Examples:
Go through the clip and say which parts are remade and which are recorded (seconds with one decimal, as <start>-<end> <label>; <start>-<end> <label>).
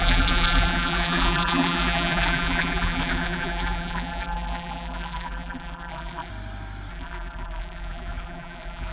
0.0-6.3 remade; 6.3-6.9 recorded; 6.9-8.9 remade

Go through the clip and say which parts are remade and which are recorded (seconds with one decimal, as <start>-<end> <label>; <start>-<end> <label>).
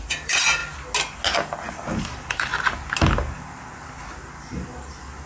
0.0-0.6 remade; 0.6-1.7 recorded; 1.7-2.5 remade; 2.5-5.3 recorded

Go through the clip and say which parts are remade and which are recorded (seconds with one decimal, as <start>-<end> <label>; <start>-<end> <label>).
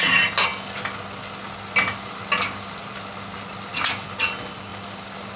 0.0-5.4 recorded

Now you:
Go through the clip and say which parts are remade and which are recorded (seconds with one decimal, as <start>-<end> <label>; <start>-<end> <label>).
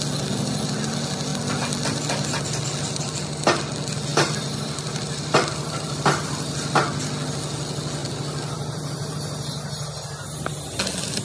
0.0-4.1 recorded; 4.1-6.8 remade; 6.8-8.0 recorded; 8.0-9.1 remade; 9.1-11.2 recorded